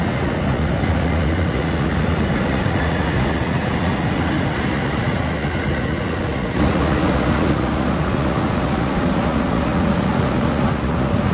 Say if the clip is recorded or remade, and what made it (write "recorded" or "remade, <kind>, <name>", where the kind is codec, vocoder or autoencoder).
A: remade, vocoder, Vocos